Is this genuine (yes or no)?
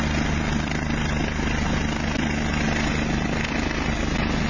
yes